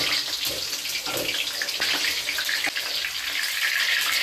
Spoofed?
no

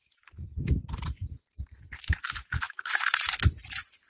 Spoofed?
yes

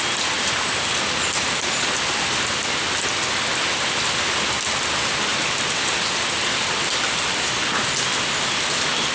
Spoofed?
no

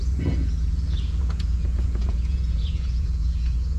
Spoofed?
yes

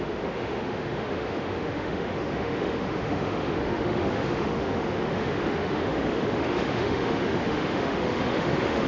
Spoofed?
yes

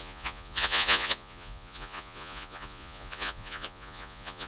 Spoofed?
yes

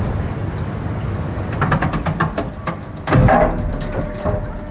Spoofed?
no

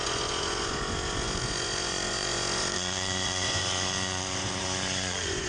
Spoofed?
yes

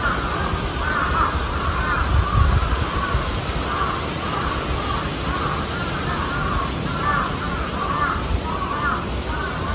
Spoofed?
no